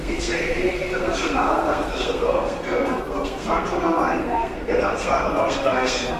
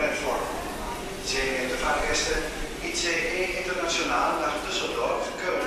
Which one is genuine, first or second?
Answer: second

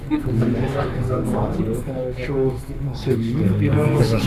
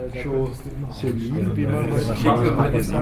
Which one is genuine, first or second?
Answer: second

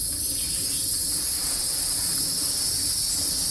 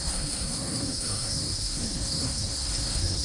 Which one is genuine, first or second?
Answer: first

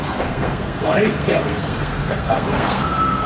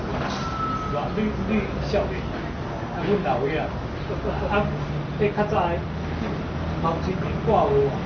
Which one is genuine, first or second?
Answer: second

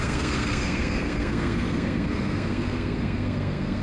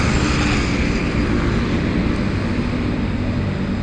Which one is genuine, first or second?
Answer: second